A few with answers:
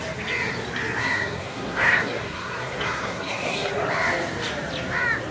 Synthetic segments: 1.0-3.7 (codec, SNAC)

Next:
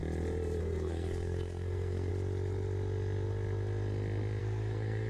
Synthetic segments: 0.6-2.1 (codec, SNAC); 4.4-5.1

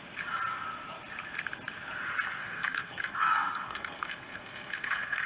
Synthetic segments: 2.4-5.3 (codec, SNAC)

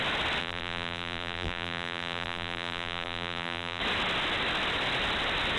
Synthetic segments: 0.4-3.8 (vocoder, BigVGAN v2)